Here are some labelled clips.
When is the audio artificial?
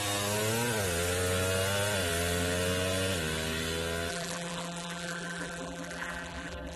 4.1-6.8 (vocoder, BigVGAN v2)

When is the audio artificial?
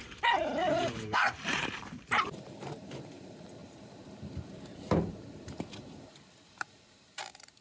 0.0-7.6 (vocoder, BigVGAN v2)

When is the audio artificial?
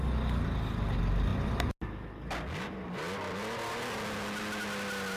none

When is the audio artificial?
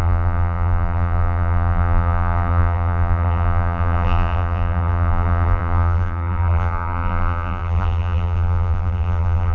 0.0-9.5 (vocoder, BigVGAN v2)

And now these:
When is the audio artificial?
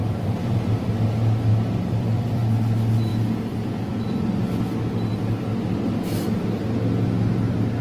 0.0-0.8 (vocoder, BigVGAN v2); 1.5-2.4; 3.1-4.4; 5.6-6.4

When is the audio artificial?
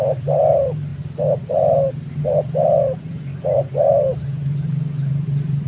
0.0-5.7 (vocoder, BigVGAN v2)